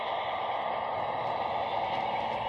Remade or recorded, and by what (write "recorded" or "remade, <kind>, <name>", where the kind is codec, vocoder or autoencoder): recorded